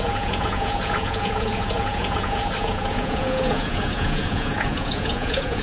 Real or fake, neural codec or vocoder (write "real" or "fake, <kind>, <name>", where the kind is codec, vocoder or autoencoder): fake, vocoder, Vocos